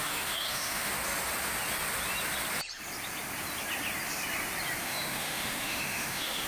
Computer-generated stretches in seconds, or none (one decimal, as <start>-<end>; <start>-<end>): 0.0-0.9; 4.8-6.5